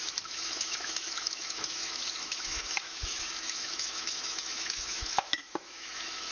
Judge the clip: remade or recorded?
remade